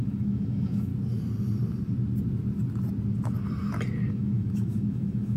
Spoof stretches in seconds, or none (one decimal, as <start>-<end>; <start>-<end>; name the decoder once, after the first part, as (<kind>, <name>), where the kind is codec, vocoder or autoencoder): 0.0-0.9 (autoencoder, DAC-VAE); 4.1-5.4